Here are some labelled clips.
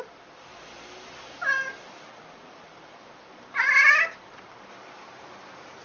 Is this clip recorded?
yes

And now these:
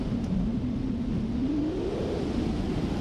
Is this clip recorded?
yes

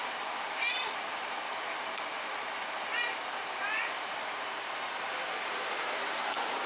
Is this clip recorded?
no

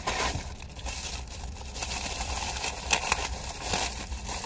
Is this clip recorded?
no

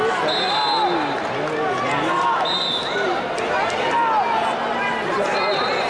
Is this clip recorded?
yes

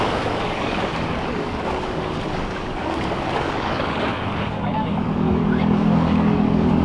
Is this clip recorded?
no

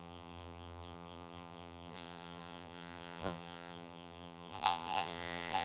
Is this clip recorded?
no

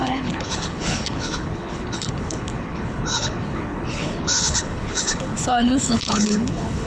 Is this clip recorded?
no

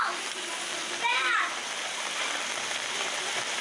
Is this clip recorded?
yes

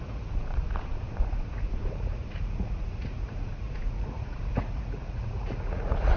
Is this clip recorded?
no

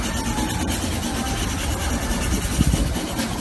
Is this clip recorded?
yes